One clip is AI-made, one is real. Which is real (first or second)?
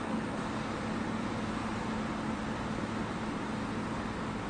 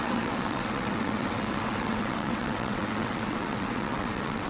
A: first